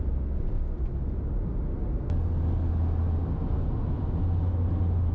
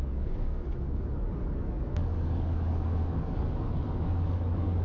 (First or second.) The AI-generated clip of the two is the second